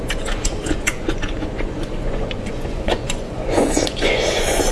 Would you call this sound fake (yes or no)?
yes